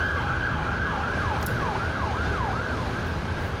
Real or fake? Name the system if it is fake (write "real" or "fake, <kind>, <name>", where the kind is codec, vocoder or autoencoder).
real